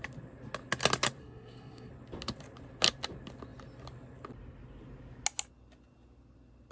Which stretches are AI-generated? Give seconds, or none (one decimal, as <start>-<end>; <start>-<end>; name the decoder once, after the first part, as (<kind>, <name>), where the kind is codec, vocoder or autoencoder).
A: 1.2-1.9 (codec, SNAC)